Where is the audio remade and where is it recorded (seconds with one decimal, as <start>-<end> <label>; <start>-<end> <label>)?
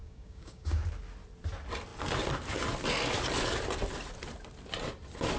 0.0-0.8 remade; 0.8-5.4 recorded